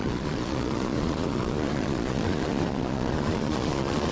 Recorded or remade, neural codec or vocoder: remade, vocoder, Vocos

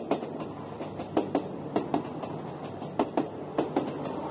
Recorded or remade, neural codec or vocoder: recorded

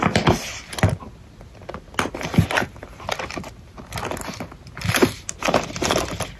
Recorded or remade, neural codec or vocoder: recorded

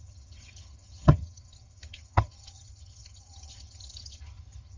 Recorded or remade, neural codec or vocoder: remade, vocoder, HiFi-GAN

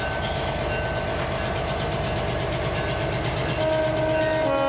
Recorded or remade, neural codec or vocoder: recorded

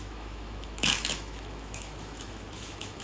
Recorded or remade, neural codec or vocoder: remade, autoencoder, DAC-VAE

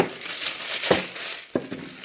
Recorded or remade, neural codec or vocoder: recorded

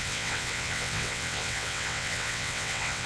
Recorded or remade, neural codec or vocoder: remade, vocoder, WaveNeXt